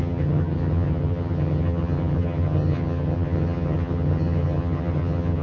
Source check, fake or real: fake